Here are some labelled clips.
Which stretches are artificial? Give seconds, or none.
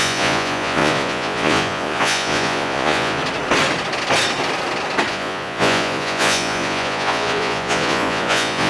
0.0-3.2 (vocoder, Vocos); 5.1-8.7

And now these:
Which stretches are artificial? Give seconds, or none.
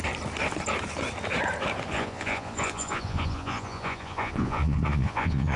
1.9-5.6 (vocoder, Vocos)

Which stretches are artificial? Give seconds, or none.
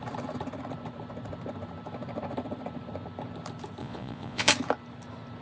3.8-4.5 (vocoder, Vocos)